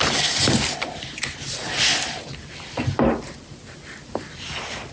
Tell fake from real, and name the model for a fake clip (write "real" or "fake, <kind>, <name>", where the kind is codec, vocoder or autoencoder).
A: real